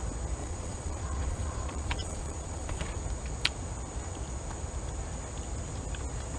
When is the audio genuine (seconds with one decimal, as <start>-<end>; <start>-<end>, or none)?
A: 0.0-0.4; 3.0-6.4